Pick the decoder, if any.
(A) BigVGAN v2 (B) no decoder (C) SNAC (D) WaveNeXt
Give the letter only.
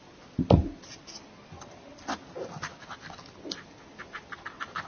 B